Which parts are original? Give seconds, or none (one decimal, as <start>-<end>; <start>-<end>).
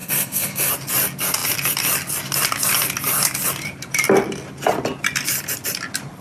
0.7-6.2